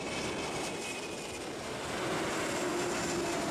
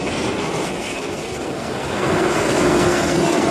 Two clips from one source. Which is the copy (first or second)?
second